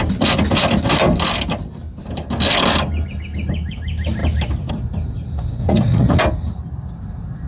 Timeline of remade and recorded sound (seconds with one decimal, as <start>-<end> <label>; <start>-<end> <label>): 0.0-5.6 recorded; 5.6-6.2 remade; 6.2-7.5 recorded